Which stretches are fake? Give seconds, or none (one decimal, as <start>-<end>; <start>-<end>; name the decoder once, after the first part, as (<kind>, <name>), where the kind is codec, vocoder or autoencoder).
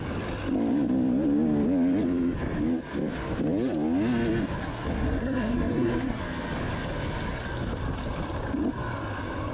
4.6-6.2 (codec, SNAC)